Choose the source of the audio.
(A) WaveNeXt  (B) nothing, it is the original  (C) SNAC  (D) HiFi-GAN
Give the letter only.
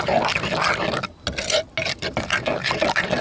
B